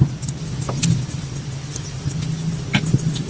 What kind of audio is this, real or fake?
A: real